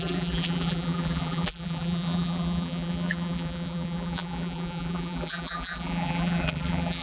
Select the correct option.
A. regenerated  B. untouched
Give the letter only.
A